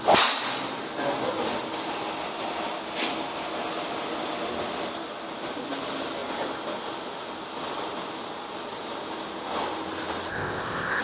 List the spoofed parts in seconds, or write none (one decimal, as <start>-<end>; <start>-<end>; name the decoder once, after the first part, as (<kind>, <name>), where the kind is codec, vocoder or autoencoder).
10.3-11.0 (codec, ZipCodec)